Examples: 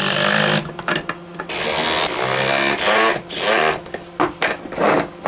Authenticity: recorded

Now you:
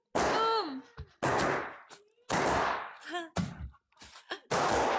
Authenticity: recorded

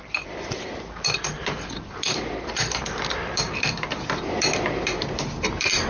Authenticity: remade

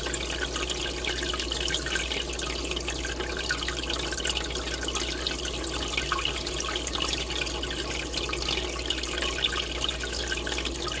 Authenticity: recorded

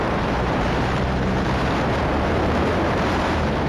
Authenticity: remade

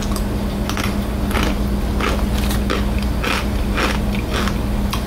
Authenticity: recorded